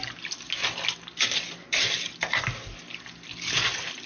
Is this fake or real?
real